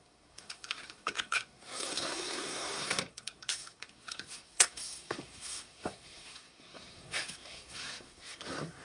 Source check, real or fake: fake